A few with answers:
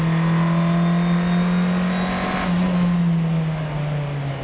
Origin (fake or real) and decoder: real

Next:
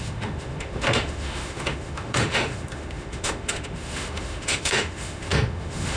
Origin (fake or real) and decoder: fake, autoencoder, DAC-VAE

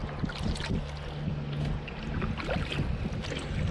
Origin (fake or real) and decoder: real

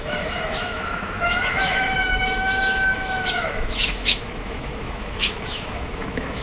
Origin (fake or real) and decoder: fake, autoencoder, DAC-VAE